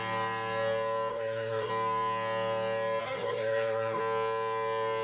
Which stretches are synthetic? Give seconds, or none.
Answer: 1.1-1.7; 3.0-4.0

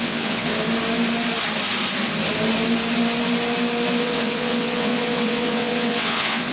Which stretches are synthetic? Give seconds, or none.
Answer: 0.0-0.5; 4.0-6.5

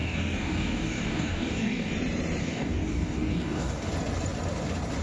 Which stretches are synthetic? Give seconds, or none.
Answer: 0.0-1.9; 2.4-3.9

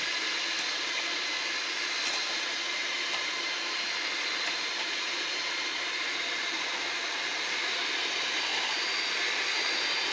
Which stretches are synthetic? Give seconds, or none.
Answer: 2.8-7.8

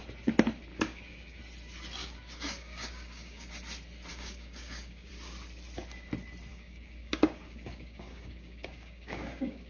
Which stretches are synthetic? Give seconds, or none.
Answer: 0.7-1.4; 2.0-3.5; 4.1-5.1; 6.5-9.7

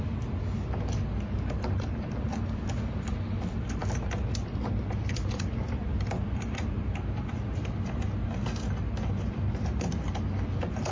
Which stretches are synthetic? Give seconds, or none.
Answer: none